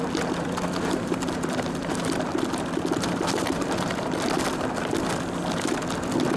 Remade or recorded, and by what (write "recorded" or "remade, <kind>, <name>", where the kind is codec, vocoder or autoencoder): remade, vocoder, BigVGAN v2